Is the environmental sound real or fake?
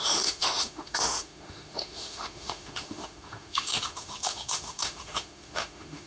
fake